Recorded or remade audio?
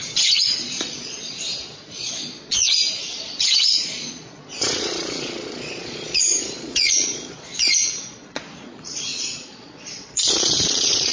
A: remade